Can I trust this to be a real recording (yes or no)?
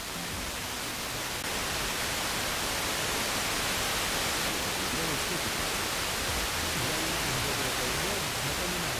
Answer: yes